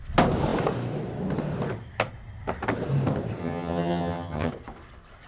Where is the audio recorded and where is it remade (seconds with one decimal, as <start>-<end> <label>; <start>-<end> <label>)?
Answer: 0.0-3.4 recorded; 3.4-4.5 remade; 4.5-5.3 recorded